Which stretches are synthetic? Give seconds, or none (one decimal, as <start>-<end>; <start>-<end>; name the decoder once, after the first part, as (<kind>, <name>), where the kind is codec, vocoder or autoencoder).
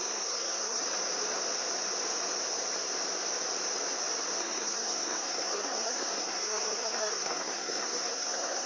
0.0-0.8 (codec, SNAC); 4.4-8.7